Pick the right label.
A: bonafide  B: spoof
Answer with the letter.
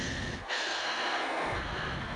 B